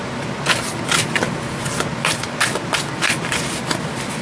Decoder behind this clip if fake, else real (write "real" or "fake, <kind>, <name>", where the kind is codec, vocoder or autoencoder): real